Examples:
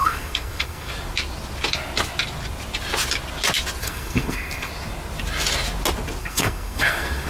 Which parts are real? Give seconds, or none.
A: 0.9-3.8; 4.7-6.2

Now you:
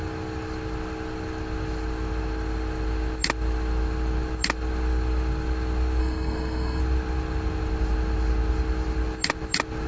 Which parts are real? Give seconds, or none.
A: 0.0-6.0; 6.8-9.9